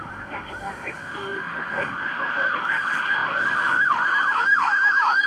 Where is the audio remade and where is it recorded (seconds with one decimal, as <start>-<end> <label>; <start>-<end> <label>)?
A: 0.0-5.3 remade